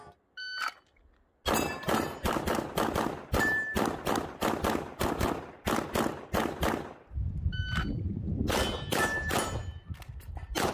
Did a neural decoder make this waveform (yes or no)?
no